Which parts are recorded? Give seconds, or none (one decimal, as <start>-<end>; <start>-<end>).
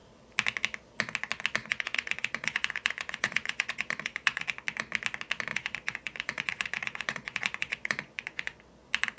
0.0-1.6; 4.5-5.5; 8.6-9.2